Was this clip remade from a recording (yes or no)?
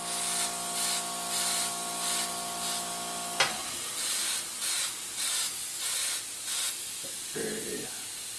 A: no